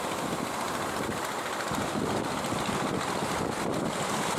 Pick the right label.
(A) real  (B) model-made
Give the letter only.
A